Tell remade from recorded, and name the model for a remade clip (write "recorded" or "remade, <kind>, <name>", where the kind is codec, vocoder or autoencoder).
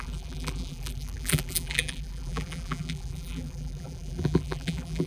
remade, vocoder, BigVGAN v2